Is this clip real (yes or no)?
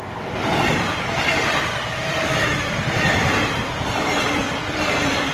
no